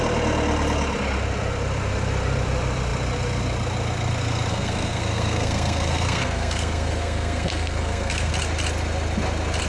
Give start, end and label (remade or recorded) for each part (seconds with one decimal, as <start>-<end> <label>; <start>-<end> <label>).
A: 0.0-4.5 recorded; 4.5-8.3 remade; 8.3-9.7 recorded